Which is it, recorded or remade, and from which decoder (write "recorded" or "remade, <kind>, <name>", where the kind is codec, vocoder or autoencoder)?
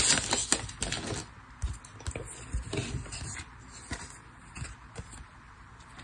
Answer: recorded